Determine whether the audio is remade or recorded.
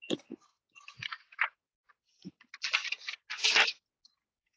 recorded